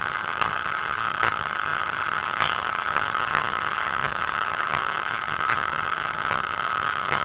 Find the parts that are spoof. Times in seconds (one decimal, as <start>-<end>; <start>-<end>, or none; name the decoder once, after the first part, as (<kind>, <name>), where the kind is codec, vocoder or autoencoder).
0.0-7.2 (vocoder, HiFi-GAN)